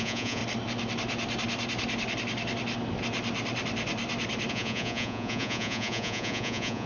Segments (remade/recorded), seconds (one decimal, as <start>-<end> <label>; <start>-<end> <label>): 0.0-0.4 remade; 0.4-4.5 recorded; 4.5-6.9 remade